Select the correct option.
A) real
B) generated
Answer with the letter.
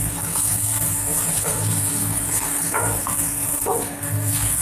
B